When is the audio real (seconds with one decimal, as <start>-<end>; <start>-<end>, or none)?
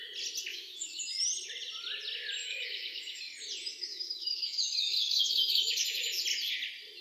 0.0-0.5; 1.0-2.4; 3.2-3.9; 6.1-7.0